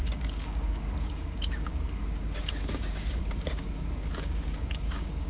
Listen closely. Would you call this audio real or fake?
fake